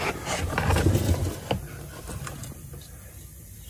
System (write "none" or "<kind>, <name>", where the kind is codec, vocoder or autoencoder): none